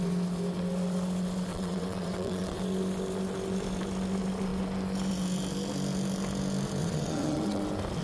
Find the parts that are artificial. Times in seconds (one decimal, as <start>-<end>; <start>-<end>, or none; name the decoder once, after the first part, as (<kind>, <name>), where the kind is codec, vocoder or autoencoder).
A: 1.5-2.6 (vocoder, WaveNeXt); 6.8-7.6